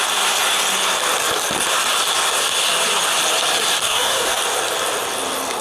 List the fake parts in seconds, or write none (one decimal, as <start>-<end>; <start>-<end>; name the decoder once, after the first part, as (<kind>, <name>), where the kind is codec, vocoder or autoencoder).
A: 3.8-4.4 (codec, DAC)